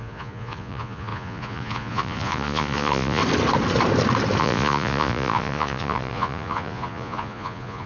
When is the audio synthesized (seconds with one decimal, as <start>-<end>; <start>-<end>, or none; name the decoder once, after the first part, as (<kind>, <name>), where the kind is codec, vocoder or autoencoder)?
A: 0.0-3.2 (vocoder, Vocos); 4.4-7.9